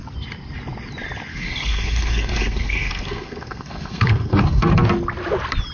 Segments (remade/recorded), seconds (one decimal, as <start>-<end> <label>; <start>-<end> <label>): 0.0-1.3 recorded; 1.3-4.7 remade; 4.7-5.7 recorded